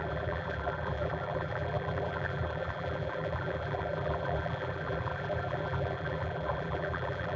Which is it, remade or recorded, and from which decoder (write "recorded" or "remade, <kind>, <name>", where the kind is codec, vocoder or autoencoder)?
remade, vocoder, BigVGAN v2